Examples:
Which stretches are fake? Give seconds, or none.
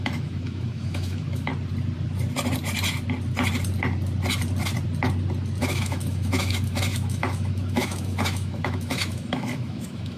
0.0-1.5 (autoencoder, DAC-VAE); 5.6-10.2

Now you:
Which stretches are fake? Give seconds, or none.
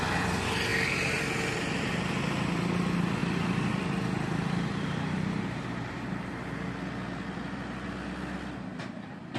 0.7-1.2 (vocoder, BigVGAN v2); 3.2-6.3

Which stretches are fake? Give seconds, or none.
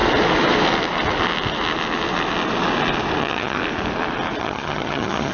3.2-3.6 (vocoder, HiFi-GAN); 4.4-5.3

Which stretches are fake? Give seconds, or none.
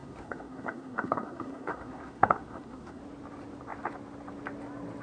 0.0-3.0 (codec, SNAC)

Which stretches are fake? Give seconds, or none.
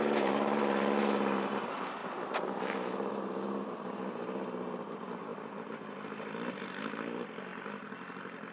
none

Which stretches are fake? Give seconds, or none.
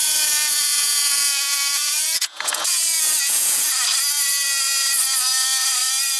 0.0-3.7 (vocoder, Vocos)